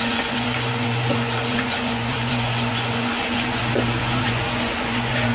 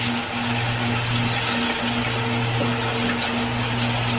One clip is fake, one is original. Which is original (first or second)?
second